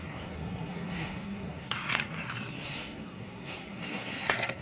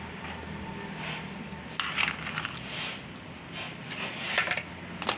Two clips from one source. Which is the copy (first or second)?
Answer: first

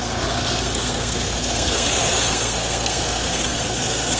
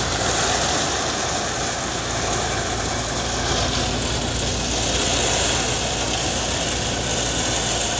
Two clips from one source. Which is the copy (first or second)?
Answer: first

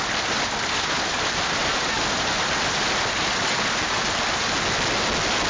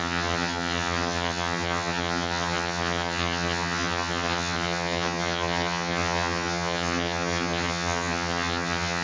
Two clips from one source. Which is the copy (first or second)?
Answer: second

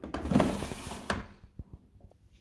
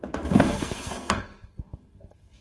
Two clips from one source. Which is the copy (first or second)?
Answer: second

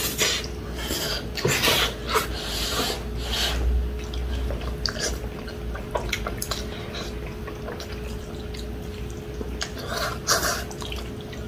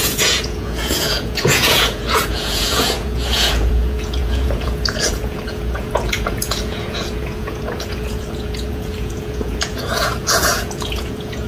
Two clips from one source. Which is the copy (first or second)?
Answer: second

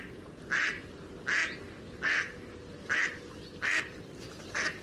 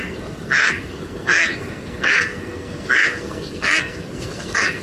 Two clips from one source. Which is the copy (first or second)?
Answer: second